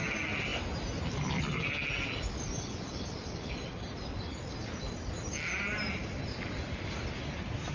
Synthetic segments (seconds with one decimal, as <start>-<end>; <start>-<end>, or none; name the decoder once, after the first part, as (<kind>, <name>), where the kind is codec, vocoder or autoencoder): none